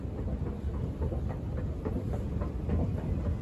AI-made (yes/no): no